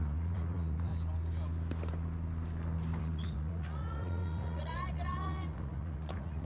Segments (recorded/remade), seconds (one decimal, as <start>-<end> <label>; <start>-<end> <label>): 0.0-0.9 remade; 0.9-3.0 recorded; 3.0-6.4 remade

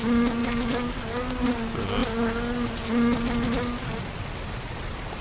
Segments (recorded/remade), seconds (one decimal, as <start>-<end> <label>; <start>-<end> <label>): 0.0-0.4 recorded; 0.4-0.9 remade; 0.9-5.2 recorded

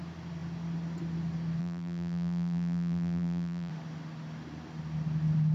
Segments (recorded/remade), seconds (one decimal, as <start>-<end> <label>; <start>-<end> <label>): 0.0-1.6 recorded; 1.6-3.7 remade; 3.7-5.5 recorded